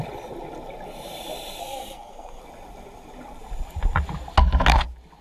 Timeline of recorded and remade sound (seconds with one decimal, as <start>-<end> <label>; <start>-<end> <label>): 0.0-1.6 recorded; 1.6-2.4 remade; 2.4-5.2 recorded